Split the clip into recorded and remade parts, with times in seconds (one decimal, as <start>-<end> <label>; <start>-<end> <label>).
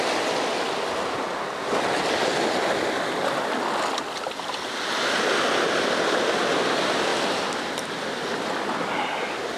0.0-9.6 recorded